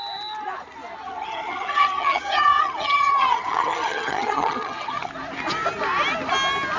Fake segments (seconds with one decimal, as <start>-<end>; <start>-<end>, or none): 1.0-5.1